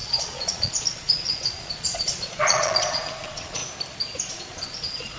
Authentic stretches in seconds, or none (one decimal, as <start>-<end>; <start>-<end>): 3.6-4.3